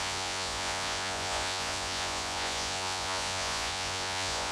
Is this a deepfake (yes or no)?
yes